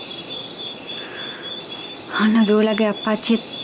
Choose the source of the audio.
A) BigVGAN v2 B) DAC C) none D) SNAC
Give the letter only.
A